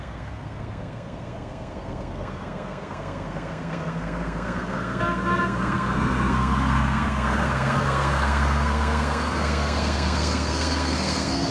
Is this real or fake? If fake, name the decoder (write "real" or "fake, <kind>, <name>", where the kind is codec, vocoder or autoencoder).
fake, codec, SNAC